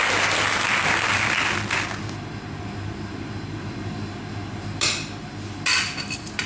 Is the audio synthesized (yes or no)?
no